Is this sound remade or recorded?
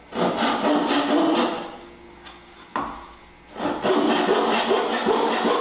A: recorded